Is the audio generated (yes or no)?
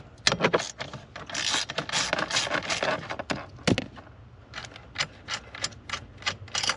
no